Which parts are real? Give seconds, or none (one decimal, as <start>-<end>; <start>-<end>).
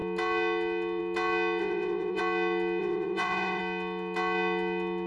0.0-1.6; 2.2-2.8; 3.6-5.1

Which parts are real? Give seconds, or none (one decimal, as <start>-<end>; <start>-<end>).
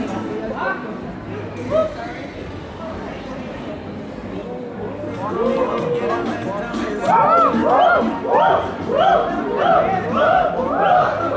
0.0-11.4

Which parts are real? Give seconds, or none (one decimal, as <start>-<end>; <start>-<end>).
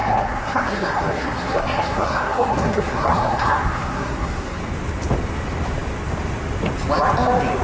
4.6-7.6